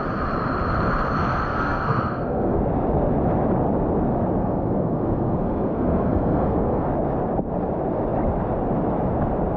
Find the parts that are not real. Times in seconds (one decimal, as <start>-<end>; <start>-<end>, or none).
1.3-2.6; 4.4-6.9